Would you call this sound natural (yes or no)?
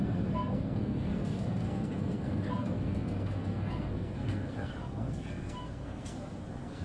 no